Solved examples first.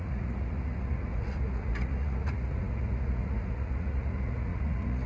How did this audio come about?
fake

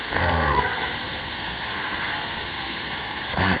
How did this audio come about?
fake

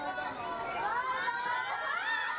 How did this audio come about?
real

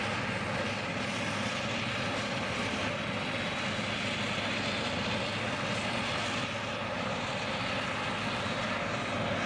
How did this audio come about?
real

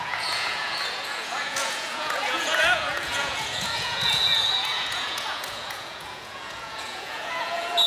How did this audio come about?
fake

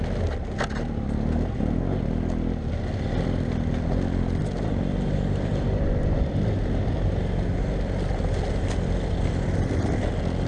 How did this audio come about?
real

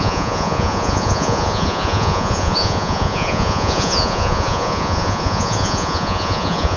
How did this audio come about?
fake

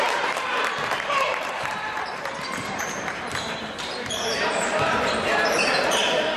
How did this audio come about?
fake